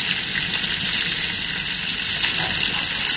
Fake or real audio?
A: real